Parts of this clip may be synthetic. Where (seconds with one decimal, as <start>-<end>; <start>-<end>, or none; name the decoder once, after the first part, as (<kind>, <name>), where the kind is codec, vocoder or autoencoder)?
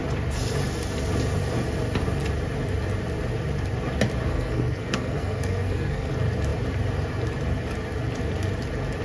4.3-6.1 (codec, SNAC)